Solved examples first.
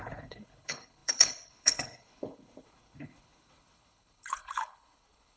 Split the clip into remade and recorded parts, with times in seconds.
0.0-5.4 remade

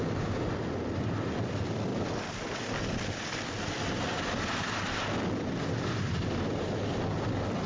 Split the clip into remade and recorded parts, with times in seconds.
0.0-7.7 recorded